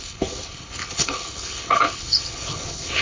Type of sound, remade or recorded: remade